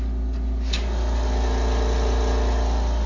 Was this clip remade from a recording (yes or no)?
no